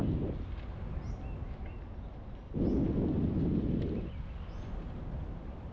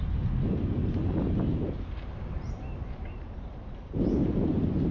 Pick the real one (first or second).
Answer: first